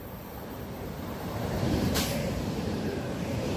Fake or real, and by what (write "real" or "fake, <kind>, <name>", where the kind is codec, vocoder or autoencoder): fake, vocoder, BigVGAN v2